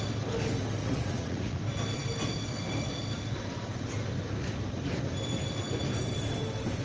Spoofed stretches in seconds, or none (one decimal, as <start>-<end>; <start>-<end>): 0.8-1.6